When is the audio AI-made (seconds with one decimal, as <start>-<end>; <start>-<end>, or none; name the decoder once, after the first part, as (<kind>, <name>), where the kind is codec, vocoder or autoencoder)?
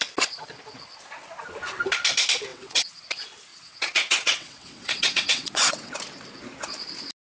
2.5-3.0 (vocoder, WaveNeXt); 3.5-5.9